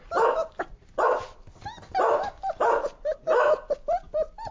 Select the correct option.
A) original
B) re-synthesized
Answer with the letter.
A